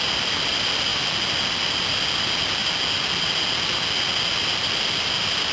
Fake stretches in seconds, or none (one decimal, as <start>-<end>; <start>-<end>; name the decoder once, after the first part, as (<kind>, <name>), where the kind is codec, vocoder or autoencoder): none